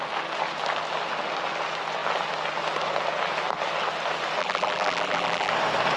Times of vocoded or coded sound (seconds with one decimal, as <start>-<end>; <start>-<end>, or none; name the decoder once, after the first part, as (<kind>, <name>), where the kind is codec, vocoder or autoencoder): 4.4-5.5 (vocoder, BigVGAN v2)